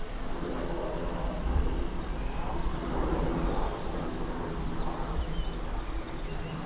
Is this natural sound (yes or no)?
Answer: yes